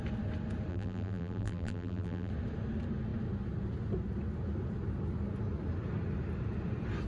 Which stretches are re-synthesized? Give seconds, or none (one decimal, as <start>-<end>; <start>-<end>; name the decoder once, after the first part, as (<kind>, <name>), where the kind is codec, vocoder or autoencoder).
0.7-2.3 (vocoder, BigVGAN v2)